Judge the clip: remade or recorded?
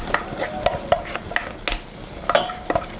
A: recorded